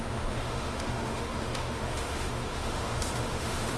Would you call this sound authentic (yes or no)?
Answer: no